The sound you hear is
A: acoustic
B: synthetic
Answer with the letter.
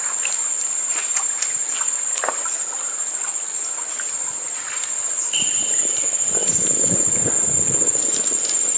A